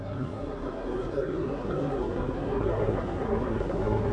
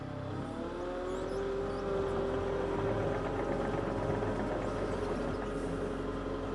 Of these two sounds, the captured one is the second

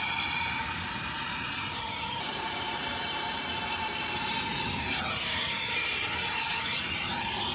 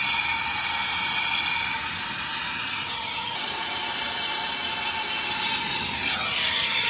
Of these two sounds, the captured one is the second